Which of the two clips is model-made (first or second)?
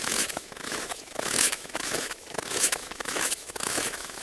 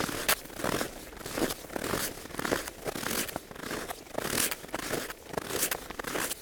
first